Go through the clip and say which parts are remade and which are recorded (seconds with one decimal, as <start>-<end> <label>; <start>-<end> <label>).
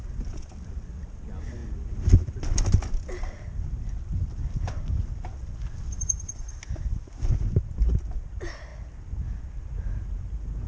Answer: 0.0-10.7 recorded